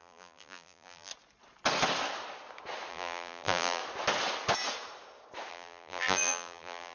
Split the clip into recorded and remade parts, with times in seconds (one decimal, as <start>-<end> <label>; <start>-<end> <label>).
0.0-1.1 remade; 1.1-2.9 recorded; 2.9-3.8 remade; 3.8-5.5 recorded; 5.5-6.9 remade